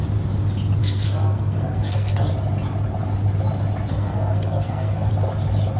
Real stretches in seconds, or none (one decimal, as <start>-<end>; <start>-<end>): 0.0-0.8; 2.3-3.9; 5.1-5.8